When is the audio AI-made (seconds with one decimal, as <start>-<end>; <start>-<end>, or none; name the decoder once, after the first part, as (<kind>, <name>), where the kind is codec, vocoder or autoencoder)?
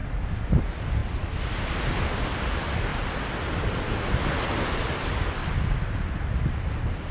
none